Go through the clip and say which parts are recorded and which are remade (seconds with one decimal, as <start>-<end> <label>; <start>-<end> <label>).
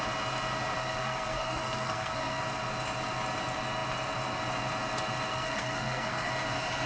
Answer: 0.0-0.8 recorded; 0.8-2.4 remade; 2.4-5.3 recorded; 5.3-6.3 remade; 6.3-6.9 recorded